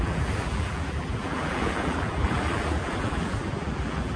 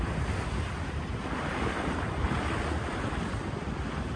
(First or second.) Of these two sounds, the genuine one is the second